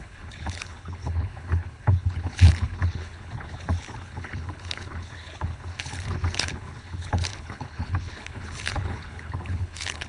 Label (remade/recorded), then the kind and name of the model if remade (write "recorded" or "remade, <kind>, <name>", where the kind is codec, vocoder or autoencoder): remade, codec, HILCodec